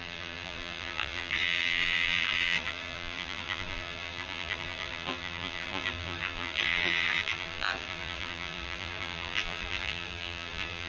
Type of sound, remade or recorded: remade